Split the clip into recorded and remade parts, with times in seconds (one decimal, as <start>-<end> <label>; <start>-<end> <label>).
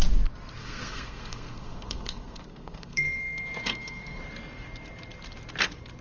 0.0-0.6 recorded; 0.6-4.2 remade; 4.2-6.0 recorded